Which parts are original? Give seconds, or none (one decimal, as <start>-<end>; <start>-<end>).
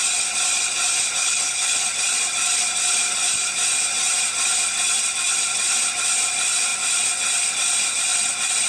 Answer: 0.0-1.2; 1.8-8.7